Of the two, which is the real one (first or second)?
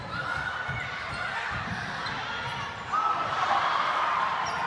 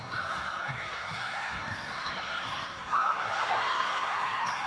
first